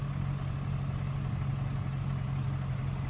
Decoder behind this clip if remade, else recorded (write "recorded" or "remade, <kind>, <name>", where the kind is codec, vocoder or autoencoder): recorded